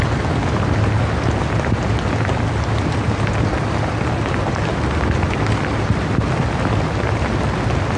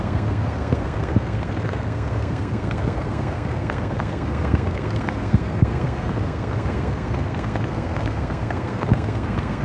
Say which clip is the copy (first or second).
second